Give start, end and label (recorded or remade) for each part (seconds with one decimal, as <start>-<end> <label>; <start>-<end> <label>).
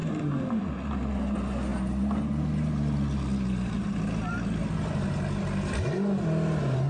0.0-6.9 recorded